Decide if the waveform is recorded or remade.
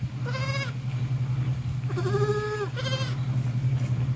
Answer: recorded